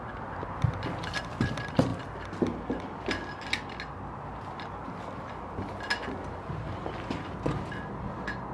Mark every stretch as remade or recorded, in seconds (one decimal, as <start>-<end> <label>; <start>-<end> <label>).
0.0-8.5 recorded